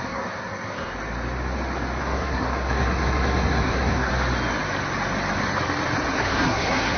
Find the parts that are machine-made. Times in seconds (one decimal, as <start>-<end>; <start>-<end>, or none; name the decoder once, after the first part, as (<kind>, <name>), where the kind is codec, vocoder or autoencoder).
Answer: 0.0-0.9 (codec, SNAC); 2.0-4.1; 6.2-7.0